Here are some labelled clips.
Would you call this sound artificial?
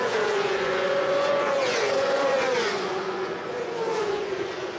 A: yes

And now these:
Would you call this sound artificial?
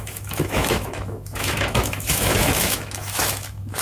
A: yes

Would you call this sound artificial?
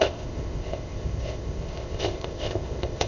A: yes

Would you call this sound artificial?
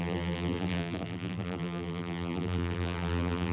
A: yes